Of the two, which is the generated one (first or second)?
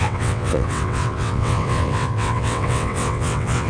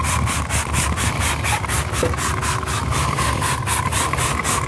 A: first